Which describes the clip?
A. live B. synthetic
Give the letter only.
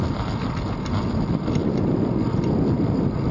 A